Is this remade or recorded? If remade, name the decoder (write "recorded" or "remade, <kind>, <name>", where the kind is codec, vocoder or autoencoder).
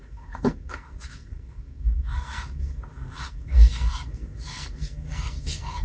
remade, codec, SNAC